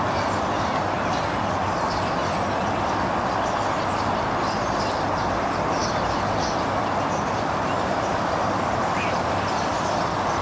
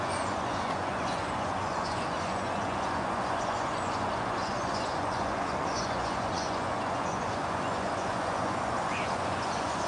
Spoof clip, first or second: second